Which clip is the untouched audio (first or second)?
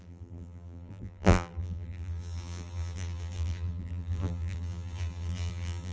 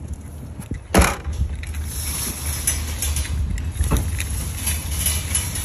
second